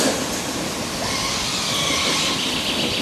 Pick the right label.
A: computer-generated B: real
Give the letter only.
B